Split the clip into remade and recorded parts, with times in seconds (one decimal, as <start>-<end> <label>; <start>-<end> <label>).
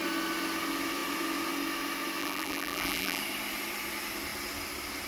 0.0-2.2 recorded; 2.2-3.2 remade; 3.2-5.1 recorded